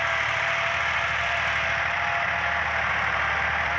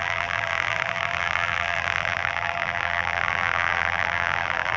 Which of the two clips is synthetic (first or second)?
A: second